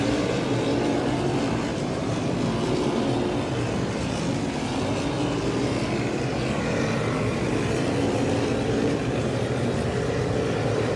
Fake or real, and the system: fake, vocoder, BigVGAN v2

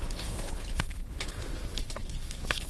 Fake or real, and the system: fake, codec, HILCodec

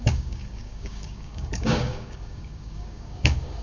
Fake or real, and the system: fake, codec, DAC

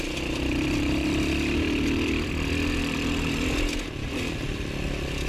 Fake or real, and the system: fake, vocoder, BigVGAN v2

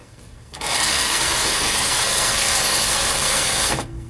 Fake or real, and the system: fake, codec, SNAC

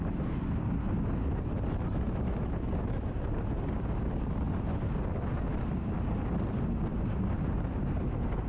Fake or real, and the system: real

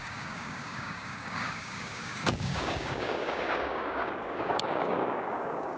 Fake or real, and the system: fake, codec, DAC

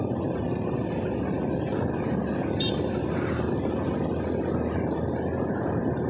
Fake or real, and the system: fake, vocoder, BigVGAN v2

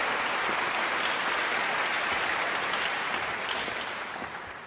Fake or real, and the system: real